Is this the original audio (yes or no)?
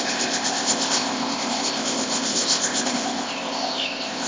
no